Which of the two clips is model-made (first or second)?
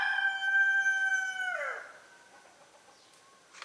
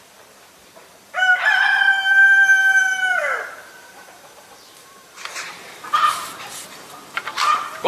second